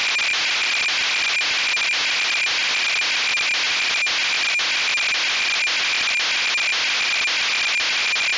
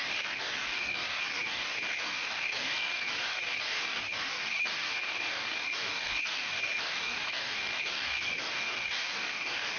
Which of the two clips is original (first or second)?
first